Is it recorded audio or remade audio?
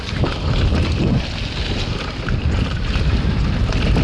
recorded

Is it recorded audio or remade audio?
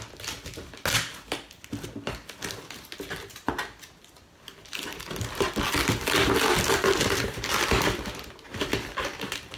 recorded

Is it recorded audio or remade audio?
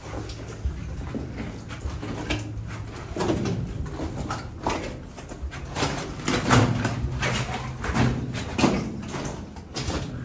recorded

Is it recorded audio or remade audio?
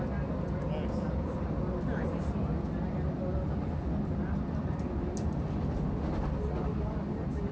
recorded